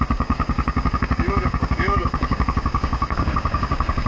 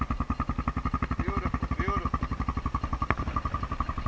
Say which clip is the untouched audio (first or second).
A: second